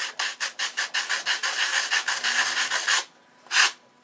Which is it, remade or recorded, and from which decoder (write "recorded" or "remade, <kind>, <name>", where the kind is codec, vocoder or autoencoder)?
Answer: recorded